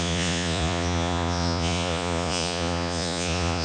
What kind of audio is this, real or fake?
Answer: fake